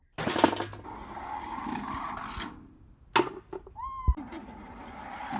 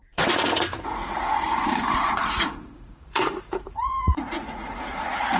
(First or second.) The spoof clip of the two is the second